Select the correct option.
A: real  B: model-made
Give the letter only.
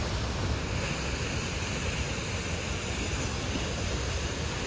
A